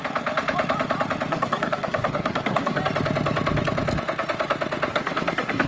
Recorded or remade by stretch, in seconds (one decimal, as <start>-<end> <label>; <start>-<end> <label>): 0.0-1.3 recorded; 1.3-2.8 remade; 2.8-4.9 recorded; 4.9-5.7 remade